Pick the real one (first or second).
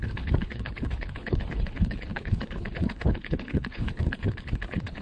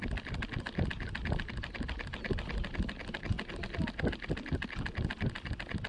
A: second